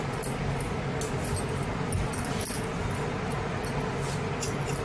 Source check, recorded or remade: recorded